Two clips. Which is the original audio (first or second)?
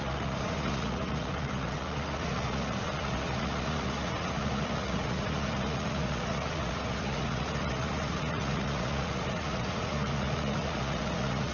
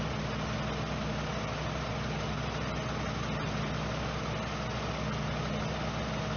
second